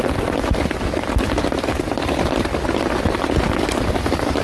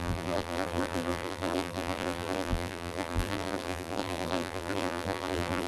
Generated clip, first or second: second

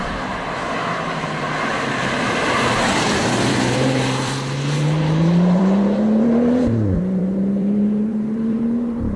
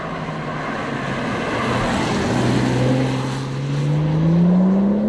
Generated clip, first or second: first